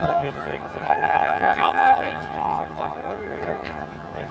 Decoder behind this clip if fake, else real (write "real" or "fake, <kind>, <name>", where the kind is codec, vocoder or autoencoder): fake, vocoder, HiFi-GAN